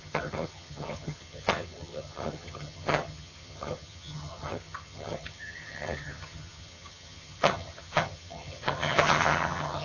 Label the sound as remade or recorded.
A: remade